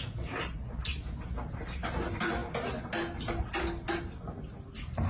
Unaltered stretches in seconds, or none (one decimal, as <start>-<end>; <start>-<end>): 0.0-5.1